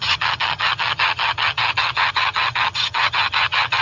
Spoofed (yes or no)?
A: yes